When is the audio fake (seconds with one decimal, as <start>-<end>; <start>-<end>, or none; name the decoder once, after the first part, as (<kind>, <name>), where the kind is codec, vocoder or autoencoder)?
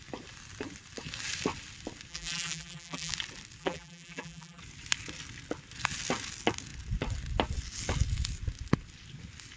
2.1-3.1 (vocoder, BigVGAN v2); 3.6-4.6